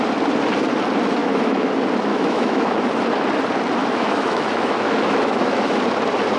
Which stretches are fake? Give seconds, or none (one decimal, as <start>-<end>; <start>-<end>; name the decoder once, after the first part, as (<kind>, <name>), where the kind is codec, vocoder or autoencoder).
1.2-1.7 (autoencoder, DAC-VAE); 2.1-2.8; 3.8-5.8